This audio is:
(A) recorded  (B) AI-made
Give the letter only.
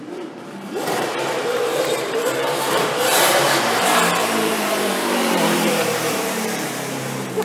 B